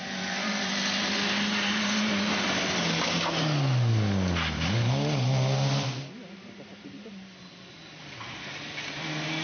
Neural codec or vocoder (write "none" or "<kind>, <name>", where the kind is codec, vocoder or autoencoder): none